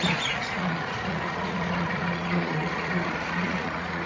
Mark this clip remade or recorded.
remade